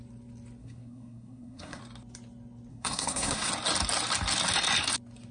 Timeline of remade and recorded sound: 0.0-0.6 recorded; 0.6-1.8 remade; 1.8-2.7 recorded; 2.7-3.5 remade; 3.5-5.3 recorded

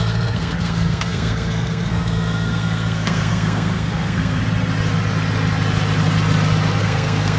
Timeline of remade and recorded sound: 0.0-4.4 remade; 4.4-6.8 recorded; 6.8-7.4 remade

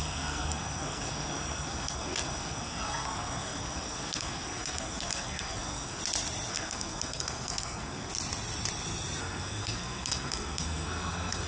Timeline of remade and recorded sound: 0.0-6.0 remade; 6.0-6.5 recorded; 6.5-8.1 remade; 8.1-9.2 recorded; 9.2-11.5 remade

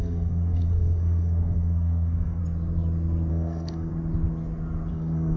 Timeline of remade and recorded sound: 0.0-2.4 remade; 2.4-3.3 recorded; 3.3-3.9 remade; 3.9-4.9 recorded; 4.9-5.4 remade

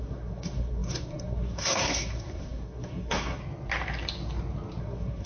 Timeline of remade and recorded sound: 0.0-3.4 remade; 3.4-4.8 recorded; 4.8-5.3 remade

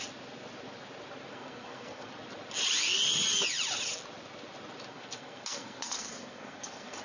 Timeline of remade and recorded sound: 0.0-1.3 recorded; 1.3-2.1 remade; 2.1-4.9 recorded; 4.9-7.0 remade